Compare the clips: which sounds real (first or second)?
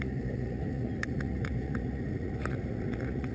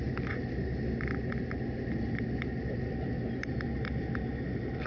second